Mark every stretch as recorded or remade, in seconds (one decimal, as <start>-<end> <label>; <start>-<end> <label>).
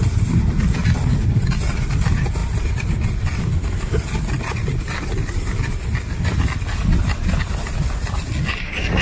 0.0-9.0 recorded